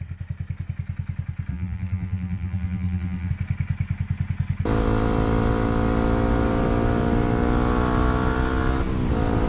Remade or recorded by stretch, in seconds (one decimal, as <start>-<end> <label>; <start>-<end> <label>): 0.0-1.5 recorded; 1.5-3.3 remade; 3.3-9.5 recorded